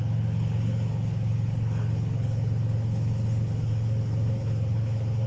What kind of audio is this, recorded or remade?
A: remade